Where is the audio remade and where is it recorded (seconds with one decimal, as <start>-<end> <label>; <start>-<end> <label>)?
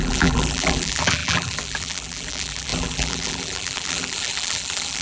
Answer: 0.0-5.0 remade